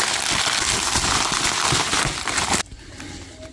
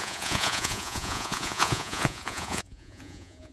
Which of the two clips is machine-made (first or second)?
second